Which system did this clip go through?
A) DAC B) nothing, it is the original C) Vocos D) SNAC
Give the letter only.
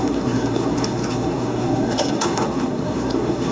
D